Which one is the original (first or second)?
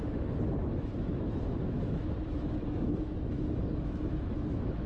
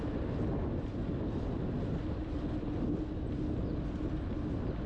second